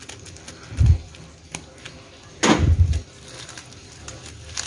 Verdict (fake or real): real